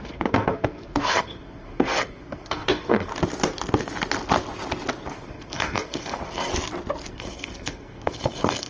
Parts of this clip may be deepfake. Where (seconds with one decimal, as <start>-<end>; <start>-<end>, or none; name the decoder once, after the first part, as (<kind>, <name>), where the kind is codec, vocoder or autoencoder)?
0.0-3.1 (codec, SNAC); 5.1-6.5; 7.1-8.7